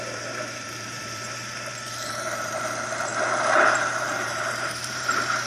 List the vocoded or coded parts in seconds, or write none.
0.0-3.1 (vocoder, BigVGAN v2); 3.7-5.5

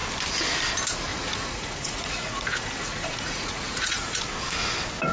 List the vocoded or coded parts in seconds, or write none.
1.1-4.2 (vocoder, Vocos)

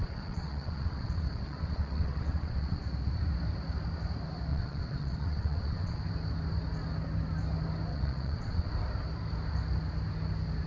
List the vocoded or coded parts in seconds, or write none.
0.0-2.8 (vocoder, WaveNeXt); 4.5-6.0; 7.9-8.7